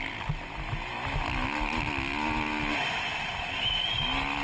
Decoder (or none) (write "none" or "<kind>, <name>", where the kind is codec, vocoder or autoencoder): none